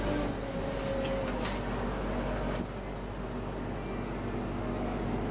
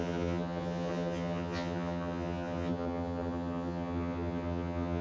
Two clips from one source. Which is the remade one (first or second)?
second